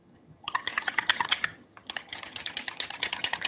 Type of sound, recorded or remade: remade